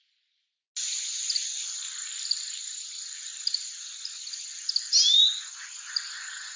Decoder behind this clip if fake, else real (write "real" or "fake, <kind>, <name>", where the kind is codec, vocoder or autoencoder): real